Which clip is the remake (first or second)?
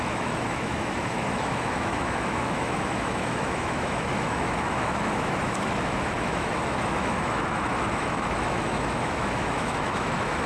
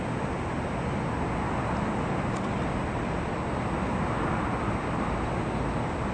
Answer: first